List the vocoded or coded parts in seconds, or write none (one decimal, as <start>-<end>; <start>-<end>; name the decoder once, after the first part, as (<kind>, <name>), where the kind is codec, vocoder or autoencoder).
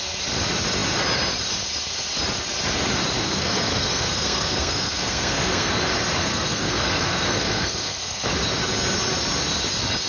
3.2-5.7 (codec, SNAC); 6.2-8.3